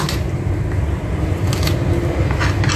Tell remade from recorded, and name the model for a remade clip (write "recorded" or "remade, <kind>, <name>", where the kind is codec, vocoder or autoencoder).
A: recorded